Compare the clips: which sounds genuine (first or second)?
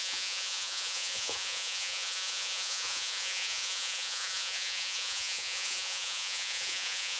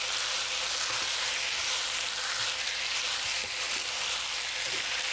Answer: second